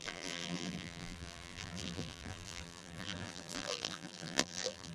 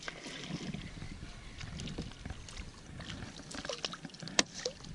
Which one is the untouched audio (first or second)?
second